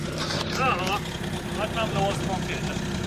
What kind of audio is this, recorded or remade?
recorded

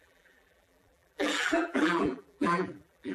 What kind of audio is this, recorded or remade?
remade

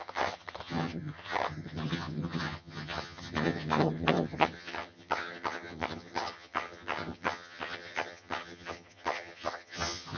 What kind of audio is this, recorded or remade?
remade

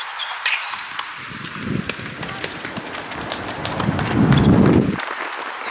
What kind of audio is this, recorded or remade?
recorded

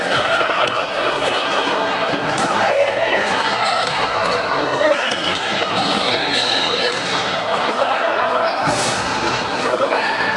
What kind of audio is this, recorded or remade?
remade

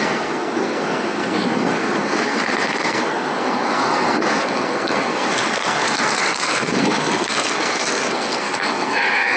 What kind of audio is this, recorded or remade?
remade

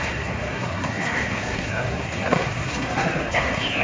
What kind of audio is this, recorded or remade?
remade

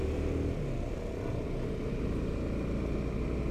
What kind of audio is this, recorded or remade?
recorded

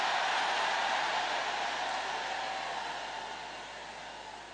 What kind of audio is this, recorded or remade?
recorded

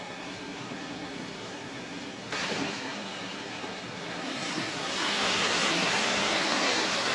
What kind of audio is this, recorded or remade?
remade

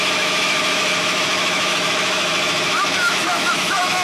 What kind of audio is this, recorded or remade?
remade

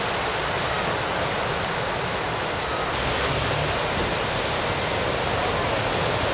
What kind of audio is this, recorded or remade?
recorded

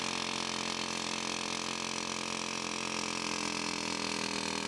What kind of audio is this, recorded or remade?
recorded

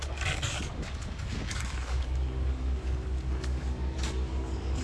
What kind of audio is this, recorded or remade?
remade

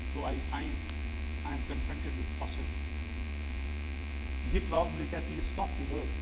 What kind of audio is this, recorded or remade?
remade